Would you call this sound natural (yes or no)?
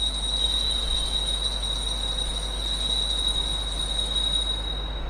yes